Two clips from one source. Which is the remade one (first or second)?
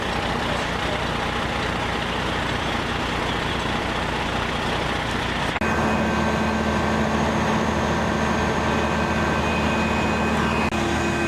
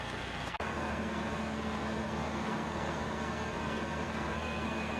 second